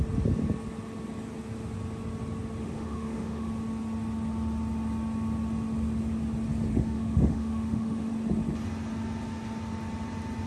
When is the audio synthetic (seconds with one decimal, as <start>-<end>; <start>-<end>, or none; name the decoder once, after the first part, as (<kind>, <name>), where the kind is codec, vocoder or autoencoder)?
2.6-3.5 (autoencoder, DAC-VAE); 6.7-8.1